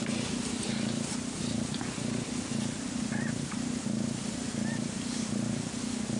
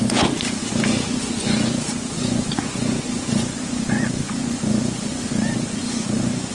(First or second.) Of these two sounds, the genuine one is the first